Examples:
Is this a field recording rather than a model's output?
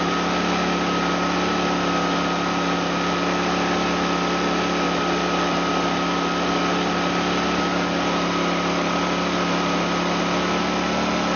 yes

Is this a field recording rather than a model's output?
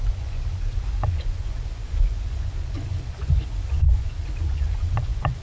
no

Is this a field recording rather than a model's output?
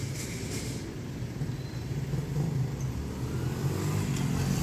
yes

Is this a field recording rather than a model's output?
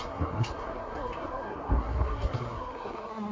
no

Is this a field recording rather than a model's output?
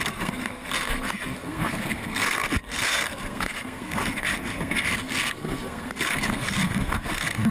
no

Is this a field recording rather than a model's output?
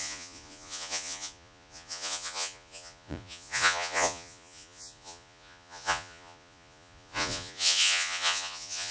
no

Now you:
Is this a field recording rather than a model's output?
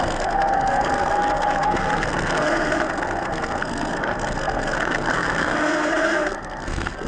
no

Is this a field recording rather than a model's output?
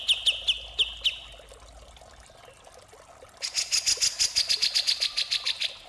yes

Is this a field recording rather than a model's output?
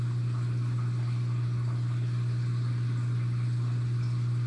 yes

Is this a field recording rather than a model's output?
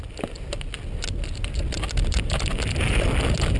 yes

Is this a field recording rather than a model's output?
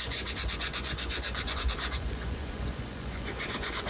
no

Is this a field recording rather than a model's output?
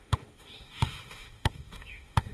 no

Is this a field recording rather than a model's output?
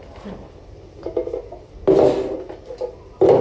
yes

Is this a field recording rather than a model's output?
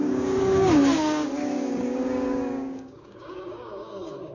no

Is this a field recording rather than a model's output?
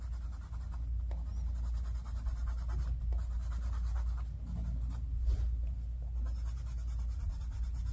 yes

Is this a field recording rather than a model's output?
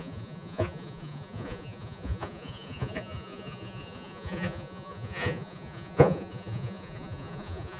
no